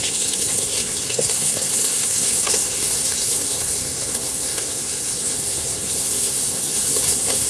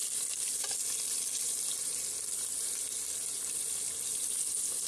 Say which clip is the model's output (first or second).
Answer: first